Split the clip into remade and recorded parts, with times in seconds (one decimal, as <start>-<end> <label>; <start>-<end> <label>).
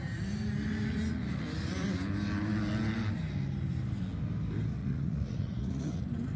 0.0-4.8 recorded; 4.8-6.0 remade; 6.0-6.4 recorded